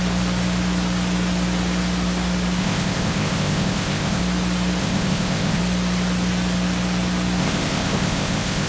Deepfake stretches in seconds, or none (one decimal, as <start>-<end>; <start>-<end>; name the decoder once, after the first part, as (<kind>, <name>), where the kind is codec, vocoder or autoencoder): 2.6-4.2 (codec, ZipCodec); 4.8-5.6; 7.4-8.7